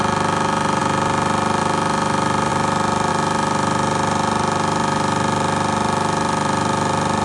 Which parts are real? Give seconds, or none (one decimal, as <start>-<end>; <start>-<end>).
0.0-7.2